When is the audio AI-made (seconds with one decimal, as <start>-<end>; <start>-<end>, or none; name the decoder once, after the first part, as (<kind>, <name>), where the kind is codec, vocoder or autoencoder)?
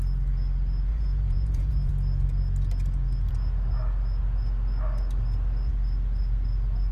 0.9-1.9 (vocoder, Vocos)